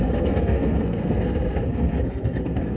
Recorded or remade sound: remade